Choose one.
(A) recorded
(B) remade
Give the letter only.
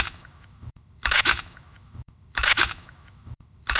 B